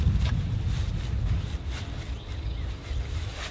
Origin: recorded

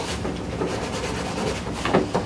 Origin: recorded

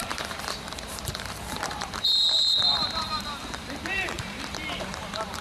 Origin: remade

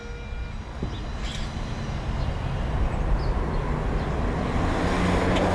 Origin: recorded